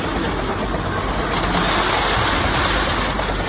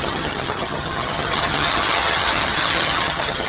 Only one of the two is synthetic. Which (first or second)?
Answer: second